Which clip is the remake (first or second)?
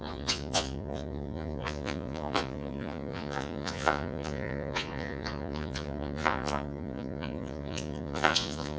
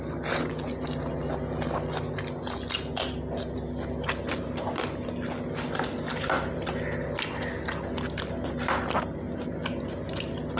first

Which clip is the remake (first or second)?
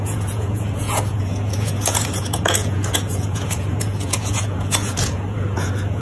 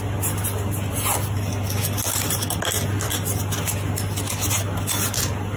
first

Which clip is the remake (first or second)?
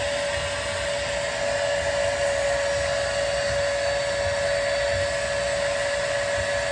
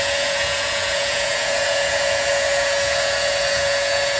second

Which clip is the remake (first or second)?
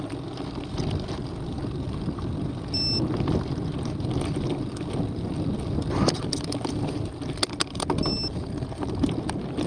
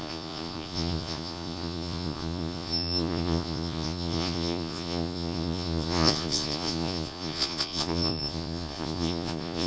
second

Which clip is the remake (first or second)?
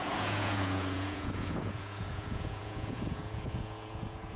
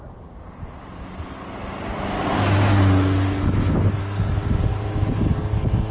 first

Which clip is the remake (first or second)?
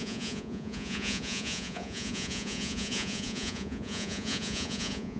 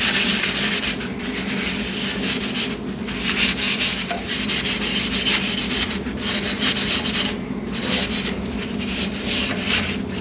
first